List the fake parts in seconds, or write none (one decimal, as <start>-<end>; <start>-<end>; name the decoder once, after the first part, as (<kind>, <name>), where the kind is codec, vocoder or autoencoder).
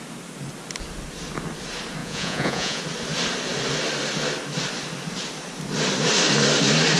2.0-2.8 (vocoder, Vocos)